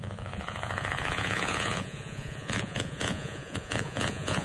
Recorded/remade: remade